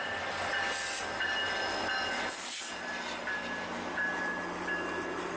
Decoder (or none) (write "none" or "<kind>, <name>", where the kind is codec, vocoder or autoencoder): none